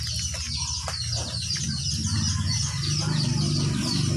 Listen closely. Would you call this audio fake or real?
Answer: real